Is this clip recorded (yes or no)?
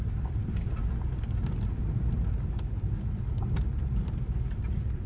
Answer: yes